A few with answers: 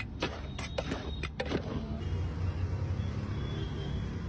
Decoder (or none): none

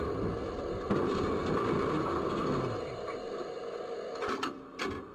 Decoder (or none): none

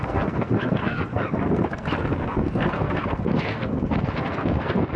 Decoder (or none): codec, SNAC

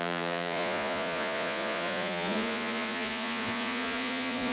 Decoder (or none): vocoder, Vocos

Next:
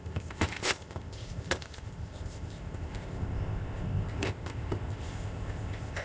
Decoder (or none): codec, ZipCodec